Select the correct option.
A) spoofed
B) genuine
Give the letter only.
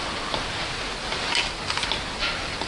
B